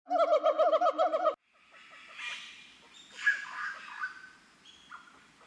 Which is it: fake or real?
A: real